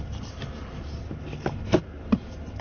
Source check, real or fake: real